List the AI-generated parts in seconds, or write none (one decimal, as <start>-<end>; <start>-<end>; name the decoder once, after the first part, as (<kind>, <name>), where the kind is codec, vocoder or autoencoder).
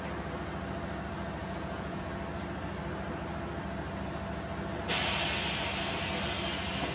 1.4-2.1 (vocoder, Vocos)